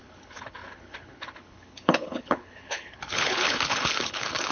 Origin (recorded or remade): remade